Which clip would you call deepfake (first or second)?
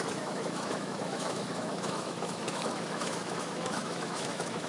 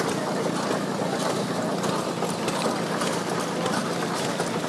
first